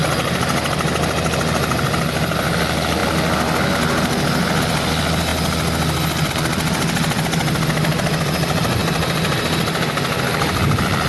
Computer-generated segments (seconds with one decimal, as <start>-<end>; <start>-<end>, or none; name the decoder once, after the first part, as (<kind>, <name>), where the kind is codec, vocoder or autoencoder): none